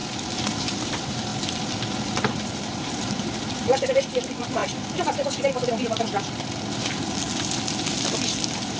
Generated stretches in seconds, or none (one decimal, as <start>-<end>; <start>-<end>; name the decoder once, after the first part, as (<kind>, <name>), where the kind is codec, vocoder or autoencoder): 0.6-1.3 (vocoder, BigVGAN v2); 2.3-4.6; 8.4-8.8